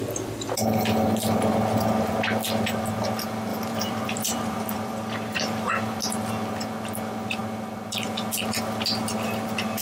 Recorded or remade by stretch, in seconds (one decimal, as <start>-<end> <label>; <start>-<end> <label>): 0.0-3.5 recorded; 3.5-5.7 remade; 5.7-9.8 recorded